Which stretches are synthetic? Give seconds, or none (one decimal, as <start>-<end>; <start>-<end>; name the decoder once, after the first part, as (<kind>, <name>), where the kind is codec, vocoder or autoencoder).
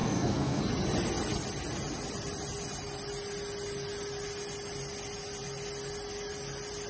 0.0-0.6 (codec, SNAC)